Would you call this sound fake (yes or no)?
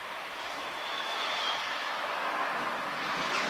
yes